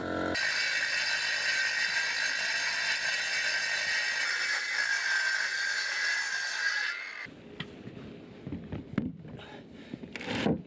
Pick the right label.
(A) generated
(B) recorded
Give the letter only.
B